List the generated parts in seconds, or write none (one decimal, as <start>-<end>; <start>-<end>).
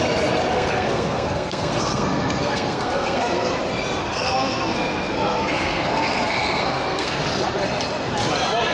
0.5-3.5; 4.0-7.2